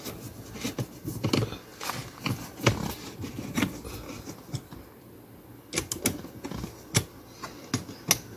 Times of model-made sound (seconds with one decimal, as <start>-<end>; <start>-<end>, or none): none